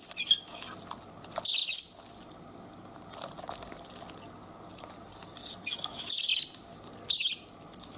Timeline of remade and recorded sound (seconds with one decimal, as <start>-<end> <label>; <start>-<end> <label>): 0.0-8.0 recorded